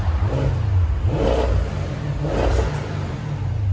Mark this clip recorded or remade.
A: recorded